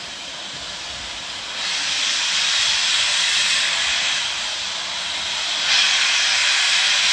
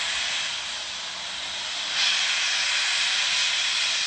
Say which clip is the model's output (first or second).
first